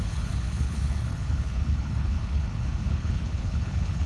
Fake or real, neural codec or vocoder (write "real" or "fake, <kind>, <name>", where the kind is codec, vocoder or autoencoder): fake, codec, HILCodec